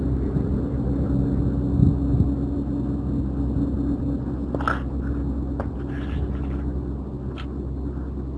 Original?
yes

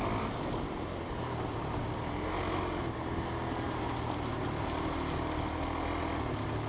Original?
yes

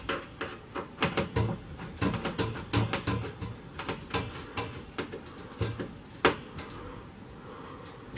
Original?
yes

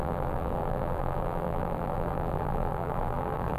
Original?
no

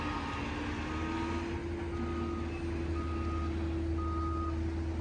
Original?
yes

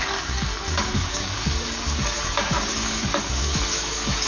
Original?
no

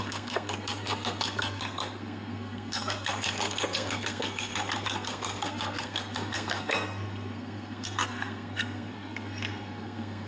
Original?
no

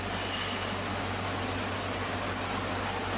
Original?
yes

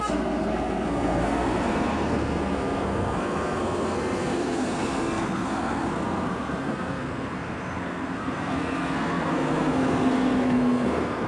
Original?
no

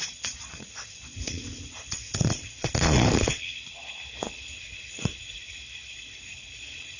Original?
no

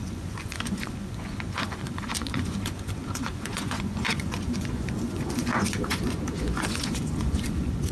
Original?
no